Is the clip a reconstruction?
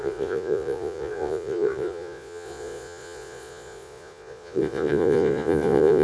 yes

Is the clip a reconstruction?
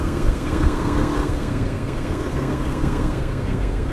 yes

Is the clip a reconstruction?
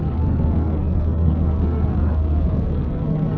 yes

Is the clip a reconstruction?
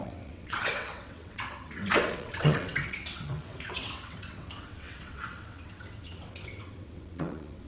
yes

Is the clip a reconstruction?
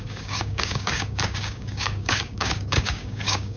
yes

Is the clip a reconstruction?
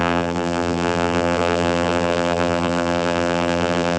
yes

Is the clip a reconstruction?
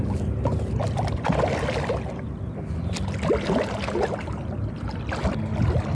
no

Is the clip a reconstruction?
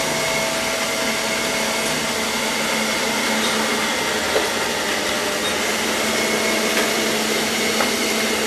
no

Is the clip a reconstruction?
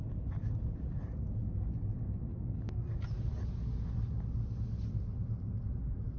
no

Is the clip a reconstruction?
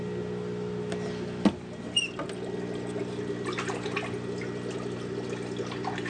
no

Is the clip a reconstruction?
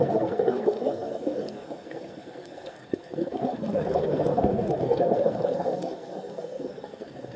yes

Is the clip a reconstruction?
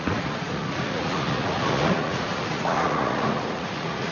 yes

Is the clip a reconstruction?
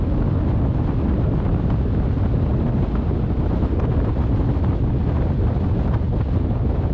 no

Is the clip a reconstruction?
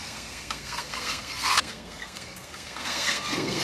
yes